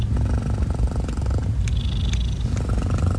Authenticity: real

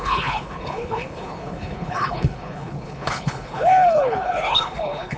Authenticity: fake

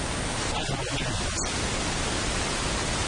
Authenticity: real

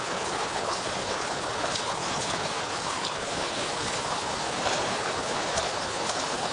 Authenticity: fake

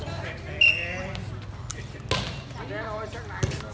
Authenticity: real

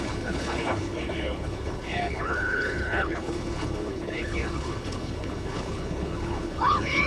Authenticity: fake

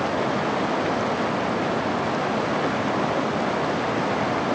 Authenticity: real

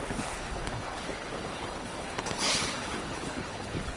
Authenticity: fake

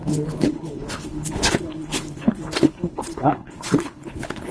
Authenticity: fake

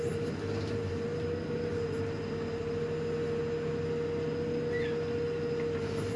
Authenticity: real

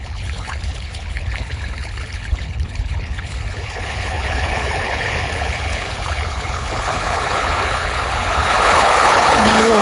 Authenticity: fake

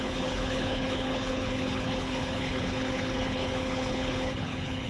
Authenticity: fake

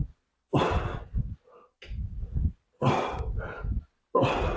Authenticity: real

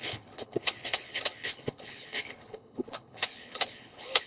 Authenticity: fake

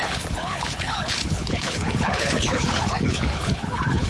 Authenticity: fake